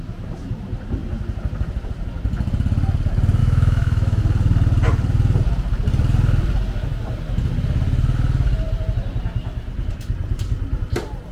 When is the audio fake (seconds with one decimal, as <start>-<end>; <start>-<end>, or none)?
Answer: 3.4-4.2